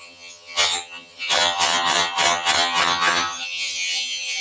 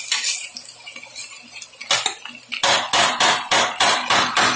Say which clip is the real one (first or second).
second